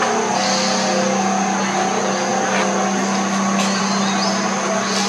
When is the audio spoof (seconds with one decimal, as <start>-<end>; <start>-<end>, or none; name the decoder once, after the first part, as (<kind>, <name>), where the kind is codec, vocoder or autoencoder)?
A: none

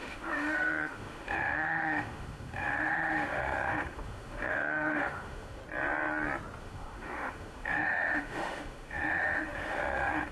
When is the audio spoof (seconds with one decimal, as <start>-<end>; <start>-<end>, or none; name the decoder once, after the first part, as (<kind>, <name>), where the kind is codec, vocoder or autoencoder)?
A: 0.0-5.6 (autoencoder, DAC-VAE); 6.6-10.3

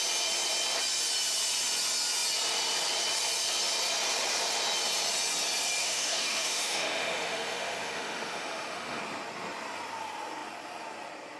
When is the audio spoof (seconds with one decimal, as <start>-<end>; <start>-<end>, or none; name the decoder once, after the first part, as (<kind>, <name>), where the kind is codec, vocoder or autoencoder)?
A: 5.8-9.0 (autoencoder, DAC-VAE)